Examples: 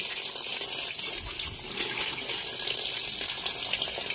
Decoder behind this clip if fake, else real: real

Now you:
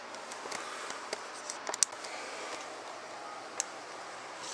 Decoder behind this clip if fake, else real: real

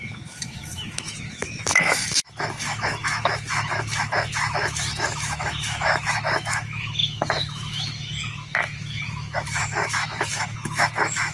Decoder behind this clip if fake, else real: fake, autoencoder, DAC-VAE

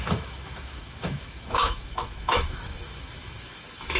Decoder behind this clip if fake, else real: fake, autoencoder, DAC-VAE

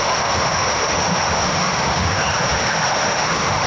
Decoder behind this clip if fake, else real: fake, autoencoder, DAC-VAE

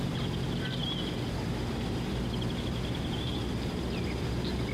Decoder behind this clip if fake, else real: real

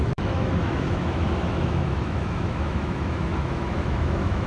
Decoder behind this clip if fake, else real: fake, autoencoder, DAC-VAE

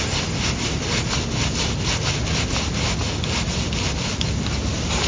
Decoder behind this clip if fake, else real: real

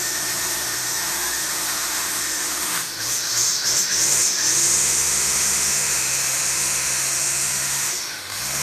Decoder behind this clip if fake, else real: fake, autoencoder, DAC-VAE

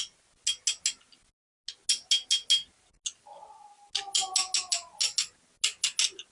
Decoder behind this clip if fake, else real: real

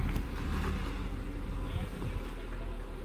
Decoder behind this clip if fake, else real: real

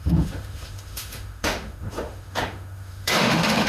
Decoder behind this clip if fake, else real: fake, autoencoder, DAC-VAE